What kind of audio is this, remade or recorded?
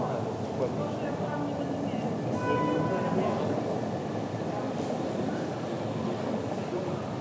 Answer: recorded